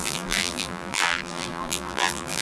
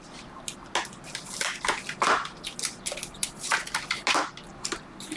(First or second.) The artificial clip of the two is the first